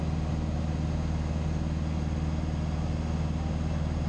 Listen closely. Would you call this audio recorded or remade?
recorded